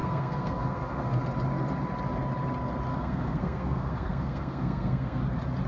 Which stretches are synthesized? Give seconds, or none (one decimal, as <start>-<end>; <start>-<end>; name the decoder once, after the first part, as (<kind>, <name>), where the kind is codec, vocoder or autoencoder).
0.0-1.2 (codec, SNAC); 2.9-5.2